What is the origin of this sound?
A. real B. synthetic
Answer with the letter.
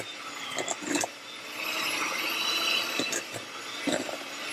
A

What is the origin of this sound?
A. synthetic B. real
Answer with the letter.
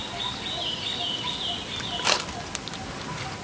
B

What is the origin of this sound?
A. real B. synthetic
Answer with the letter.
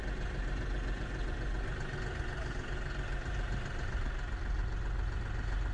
A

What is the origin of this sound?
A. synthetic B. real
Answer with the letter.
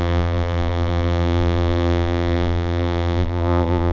A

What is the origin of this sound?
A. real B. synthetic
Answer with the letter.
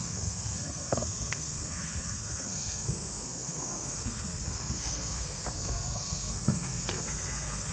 B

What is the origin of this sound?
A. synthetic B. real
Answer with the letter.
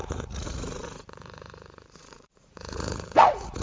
A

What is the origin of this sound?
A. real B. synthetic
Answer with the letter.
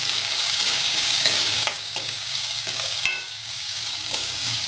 B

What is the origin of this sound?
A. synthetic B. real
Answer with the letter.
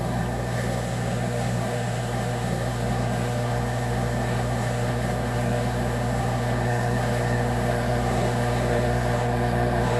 A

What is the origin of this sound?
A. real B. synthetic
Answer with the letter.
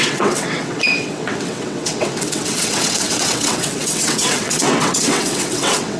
B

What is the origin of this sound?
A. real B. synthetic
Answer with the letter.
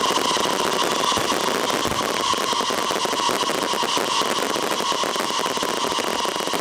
A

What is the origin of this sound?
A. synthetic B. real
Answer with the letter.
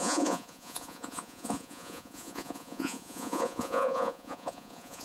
A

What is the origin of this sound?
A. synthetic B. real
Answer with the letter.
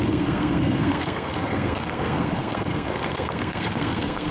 A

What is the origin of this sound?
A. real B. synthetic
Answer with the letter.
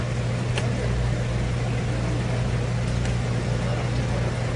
A